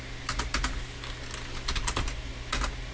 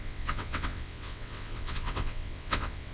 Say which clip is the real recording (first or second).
first